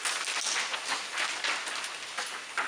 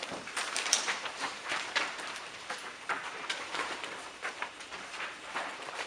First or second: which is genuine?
first